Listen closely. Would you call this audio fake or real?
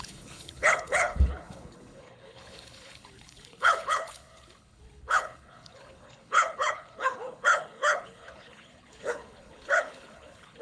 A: fake